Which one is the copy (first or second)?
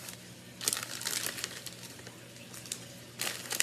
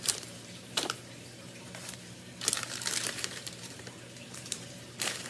second